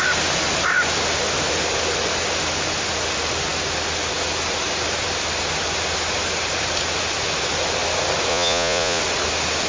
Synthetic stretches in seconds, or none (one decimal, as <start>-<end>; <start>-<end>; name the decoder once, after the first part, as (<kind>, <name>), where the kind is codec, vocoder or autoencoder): 8.3-9.0 (vocoder, Vocos)